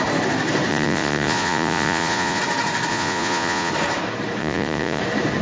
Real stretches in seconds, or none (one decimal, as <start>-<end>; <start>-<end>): 0.0-0.7; 2.4-2.9; 3.7-4.4; 5.0-5.4